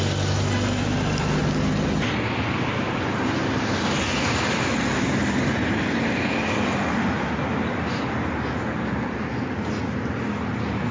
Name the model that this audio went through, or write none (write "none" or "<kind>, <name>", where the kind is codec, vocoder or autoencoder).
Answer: none